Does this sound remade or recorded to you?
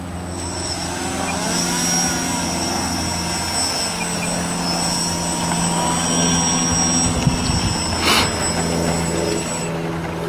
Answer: recorded